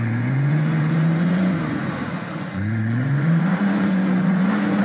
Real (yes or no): no